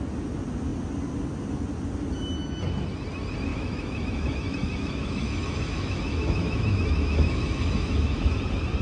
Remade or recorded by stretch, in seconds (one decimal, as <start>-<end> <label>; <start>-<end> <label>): 0.0-3.5 recorded; 3.5-8.4 remade; 8.4-8.8 recorded